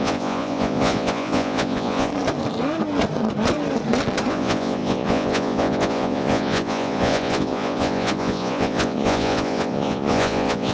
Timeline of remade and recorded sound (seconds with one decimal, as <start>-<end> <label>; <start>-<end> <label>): 0.0-2.1 remade; 2.1-4.3 recorded; 4.3-10.7 remade

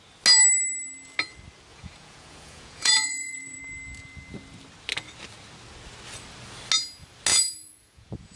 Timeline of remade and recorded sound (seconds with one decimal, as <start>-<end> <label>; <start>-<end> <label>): 0.0-1.7 recorded; 1.7-3.6 remade; 3.6-7.3 recorded; 7.3-8.4 remade

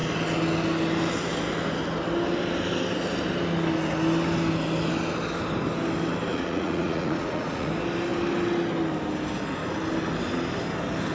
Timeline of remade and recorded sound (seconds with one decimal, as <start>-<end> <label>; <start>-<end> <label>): 0.0-6.3 recorded; 6.3-7.7 remade; 7.7-11.1 recorded